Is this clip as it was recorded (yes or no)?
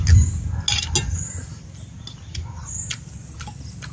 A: yes